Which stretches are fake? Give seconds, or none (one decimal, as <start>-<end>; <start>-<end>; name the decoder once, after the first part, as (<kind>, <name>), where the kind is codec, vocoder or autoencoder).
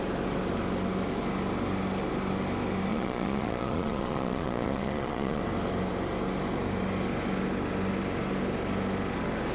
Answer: 2.9-5.4 (vocoder, Vocos)